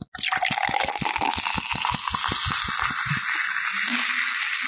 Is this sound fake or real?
real